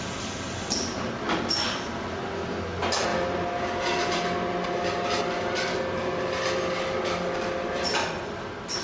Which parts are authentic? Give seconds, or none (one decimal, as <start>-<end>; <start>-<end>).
0.0-8.8